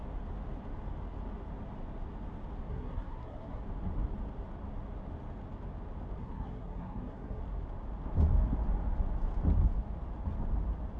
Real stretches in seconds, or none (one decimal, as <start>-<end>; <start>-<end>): 0.0-2.7; 3.6-6.2; 7.4-11.0